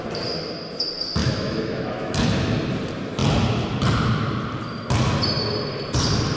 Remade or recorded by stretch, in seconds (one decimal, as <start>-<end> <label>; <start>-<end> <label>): 0.0-1.2 recorded; 1.2-2.1 remade; 2.1-6.4 recorded